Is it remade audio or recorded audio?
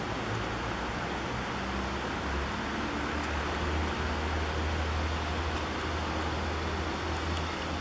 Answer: recorded